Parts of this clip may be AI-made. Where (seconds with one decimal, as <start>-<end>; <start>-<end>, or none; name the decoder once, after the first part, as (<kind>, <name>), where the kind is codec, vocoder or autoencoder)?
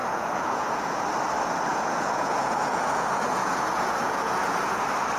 0.0-1.0 (vocoder, Vocos); 1.7-4.8